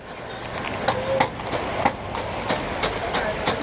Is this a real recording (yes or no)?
yes